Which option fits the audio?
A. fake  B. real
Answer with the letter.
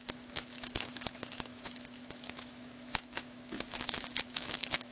A